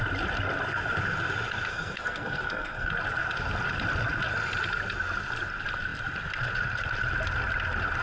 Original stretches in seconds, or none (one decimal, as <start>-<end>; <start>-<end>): 0.0-1.7; 2.9-8.0